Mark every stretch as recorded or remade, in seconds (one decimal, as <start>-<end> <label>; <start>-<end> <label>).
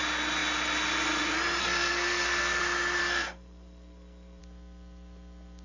0.0-1.6 recorded; 1.6-2.6 remade; 2.6-3.0 recorded; 3.0-4.4 remade; 4.4-5.6 recorded